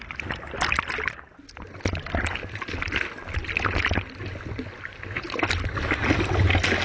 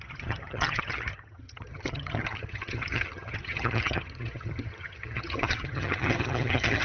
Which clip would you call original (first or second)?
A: first